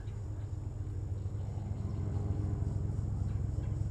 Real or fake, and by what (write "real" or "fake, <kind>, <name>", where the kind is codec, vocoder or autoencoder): real